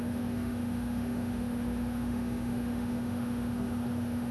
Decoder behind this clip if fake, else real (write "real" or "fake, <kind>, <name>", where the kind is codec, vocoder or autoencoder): fake, autoencoder, DAC-VAE